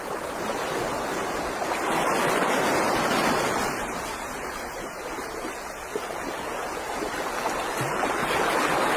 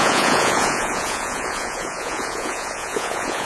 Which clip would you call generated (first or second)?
second